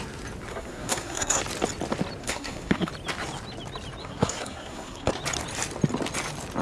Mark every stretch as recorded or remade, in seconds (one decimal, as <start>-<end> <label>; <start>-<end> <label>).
0.0-0.5 recorded; 0.5-1.4 remade; 1.4-2.2 recorded; 2.2-2.9 remade; 2.9-4.0 recorded; 4.0-5.1 remade; 5.1-6.6 recorded